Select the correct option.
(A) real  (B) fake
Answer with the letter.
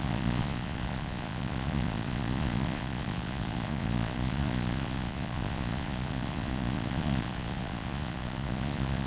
B